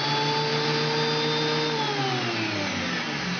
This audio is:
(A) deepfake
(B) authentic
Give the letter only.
B